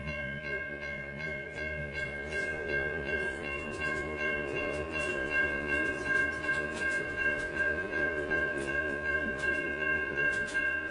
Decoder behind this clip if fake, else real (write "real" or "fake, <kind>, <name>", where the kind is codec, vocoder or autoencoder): fake, vocoder, Vocos